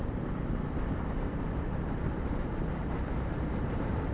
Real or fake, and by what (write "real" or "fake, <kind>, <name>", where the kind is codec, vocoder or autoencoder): fake, vocoder, BigVGAN v2